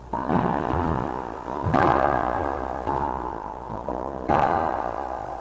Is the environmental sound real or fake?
fake